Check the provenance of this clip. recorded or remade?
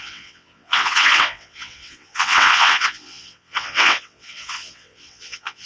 remade